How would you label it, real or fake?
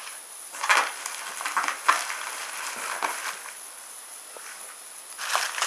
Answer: real